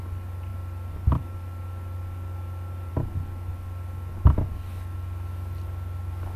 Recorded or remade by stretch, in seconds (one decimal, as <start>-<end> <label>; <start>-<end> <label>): 0.0-6.4 recorded